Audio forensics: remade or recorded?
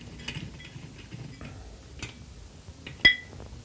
recorded